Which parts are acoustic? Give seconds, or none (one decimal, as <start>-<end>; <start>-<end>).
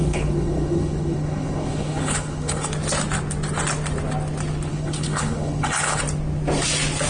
2.7-4.7; 6.0-7.1